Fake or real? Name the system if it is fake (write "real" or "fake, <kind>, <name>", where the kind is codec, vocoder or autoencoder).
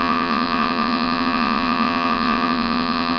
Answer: fake, vocoder, WaveNeXt